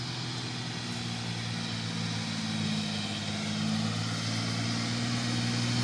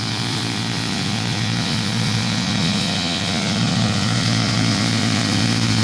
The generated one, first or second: second